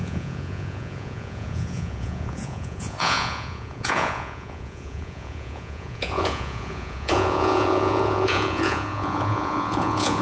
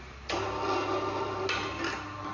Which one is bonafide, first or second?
second